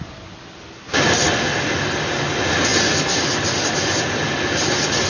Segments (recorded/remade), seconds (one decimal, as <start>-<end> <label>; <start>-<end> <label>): 0.0-5.1 recorded